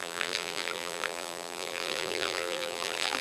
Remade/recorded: remade